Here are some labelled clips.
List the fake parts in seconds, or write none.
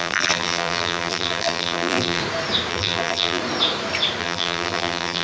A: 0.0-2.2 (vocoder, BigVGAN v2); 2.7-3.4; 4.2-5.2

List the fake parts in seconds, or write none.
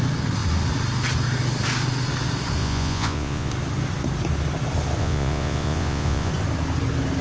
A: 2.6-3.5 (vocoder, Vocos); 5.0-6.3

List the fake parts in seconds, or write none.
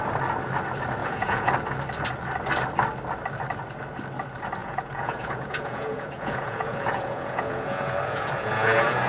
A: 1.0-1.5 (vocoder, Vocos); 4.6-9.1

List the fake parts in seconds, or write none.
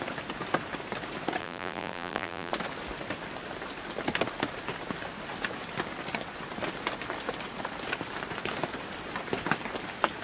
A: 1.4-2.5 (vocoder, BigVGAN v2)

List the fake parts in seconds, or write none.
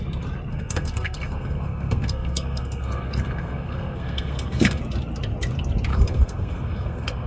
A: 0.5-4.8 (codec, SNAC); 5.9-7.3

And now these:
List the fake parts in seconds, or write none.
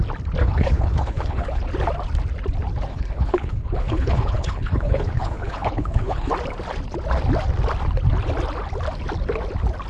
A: 0.4-1.6 (codec, HILCodec); 2.9-6.3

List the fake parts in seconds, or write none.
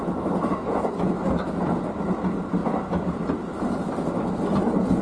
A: none